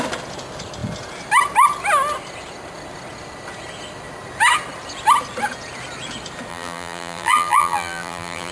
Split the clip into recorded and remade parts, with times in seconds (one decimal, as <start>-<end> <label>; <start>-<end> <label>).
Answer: 0.0-6.5 recorded; 6.5-8.5 remade